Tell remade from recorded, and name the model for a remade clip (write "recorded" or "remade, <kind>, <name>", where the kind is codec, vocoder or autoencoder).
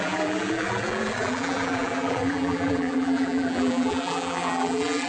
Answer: remade, vocoder, BigVGAN v2